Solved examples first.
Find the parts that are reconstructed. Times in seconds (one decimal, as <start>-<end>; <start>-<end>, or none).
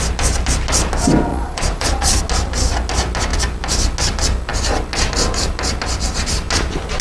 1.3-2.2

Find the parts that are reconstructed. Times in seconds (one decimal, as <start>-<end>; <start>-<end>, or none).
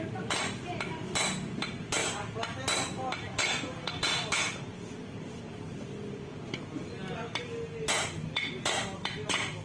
none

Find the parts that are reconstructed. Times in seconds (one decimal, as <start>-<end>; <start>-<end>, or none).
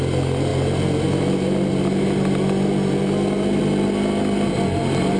none